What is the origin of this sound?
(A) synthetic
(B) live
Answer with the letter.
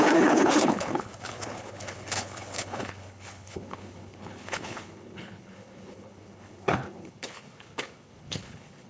A